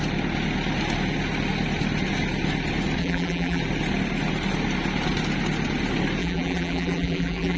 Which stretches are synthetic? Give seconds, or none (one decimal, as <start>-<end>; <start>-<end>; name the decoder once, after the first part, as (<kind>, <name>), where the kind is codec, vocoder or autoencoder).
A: 3.0-3.6 (vocoder, BigVGAN v2); 6.2-7.6